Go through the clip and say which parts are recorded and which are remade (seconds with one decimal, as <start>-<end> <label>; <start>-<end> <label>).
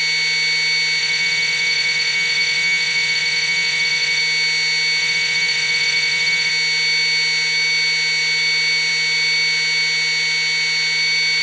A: 0.0-1.0 recorded; 1.0-4.2 remade; 4.2-5.0 recorded; 5.0-6.5 remade; 6.5-11.4 recorded